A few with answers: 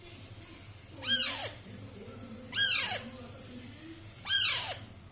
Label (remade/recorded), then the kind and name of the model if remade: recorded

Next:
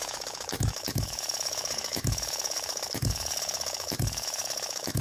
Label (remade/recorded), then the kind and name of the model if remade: remade, autoencoder, DAC-VAE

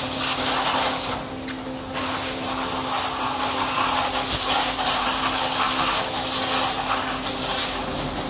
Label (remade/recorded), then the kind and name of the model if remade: recorded